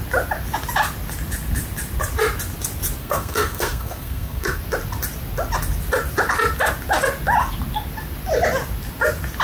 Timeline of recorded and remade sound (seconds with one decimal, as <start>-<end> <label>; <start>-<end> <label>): 0.0-3.0 recorded; 3.0-4.6 remade; 4.6-9.4 recorded